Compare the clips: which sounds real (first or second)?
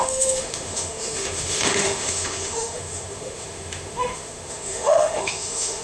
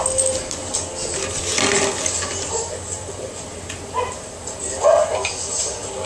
second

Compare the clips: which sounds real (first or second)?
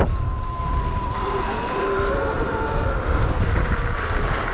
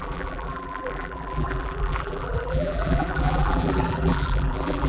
first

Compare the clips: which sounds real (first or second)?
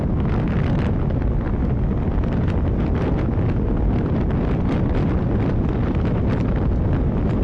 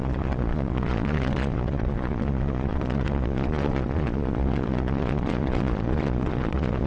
first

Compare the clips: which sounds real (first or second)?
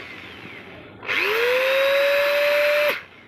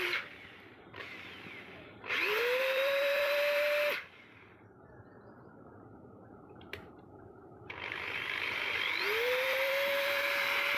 first